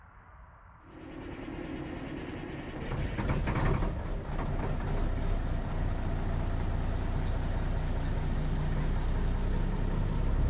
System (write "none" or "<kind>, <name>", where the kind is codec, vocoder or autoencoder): none